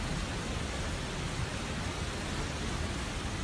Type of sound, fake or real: real